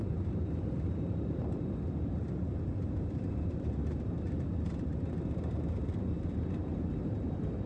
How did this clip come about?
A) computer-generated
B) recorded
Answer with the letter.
A